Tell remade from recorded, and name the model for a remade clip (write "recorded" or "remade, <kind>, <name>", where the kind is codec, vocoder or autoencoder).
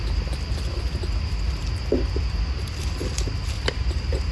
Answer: recorded